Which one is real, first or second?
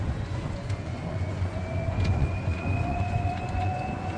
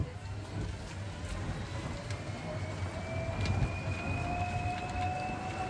second